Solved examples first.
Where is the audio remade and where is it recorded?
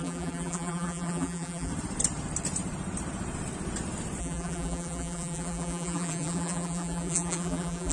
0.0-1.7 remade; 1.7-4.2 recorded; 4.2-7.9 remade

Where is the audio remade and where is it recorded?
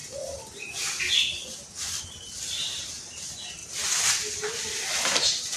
0.0-3.6 recorded; 3.6-5.6 remade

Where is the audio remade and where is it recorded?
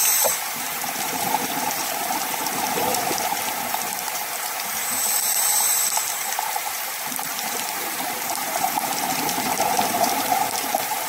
0.0-11.1 remade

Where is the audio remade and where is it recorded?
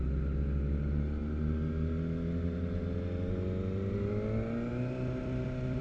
0.0-5.8 recorded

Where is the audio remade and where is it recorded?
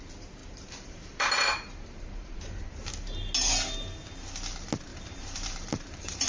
0.0-0.4 recorded; 0.4-2.9 remade; 2.9-4.9 recorded; 4.9-6.3 remade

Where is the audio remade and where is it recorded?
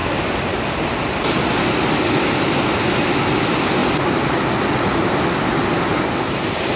0.0-3.8 recorded; 3.8-5.1 remade; 5.1-6.8 recorded